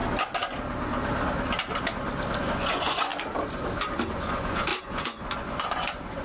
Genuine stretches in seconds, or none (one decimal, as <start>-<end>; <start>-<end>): 0.0-2.4; 3.1-4.1